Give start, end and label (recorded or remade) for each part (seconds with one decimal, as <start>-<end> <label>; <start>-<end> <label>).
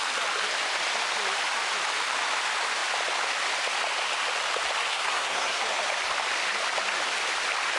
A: 0.0-4.9 recorded; 4.9-5.6 remade; 5.6-7.8 recorded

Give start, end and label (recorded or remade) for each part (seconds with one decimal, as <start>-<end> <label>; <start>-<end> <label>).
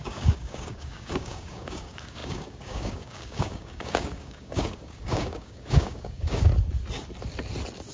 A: 0.0-6.5 remade; 6.5-7.9 recorded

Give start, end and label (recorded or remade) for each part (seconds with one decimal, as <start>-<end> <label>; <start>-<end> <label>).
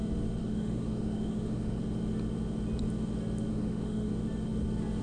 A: 0.0-0.4 recorded; 0.4-1.8 remade; 1.8-3.5 recorded; 3.5-4.1 remade; 4.1-5.0 recorded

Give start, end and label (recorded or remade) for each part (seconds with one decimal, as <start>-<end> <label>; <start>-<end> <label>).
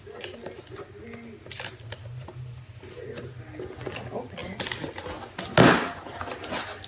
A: 0.0-6.9 recorded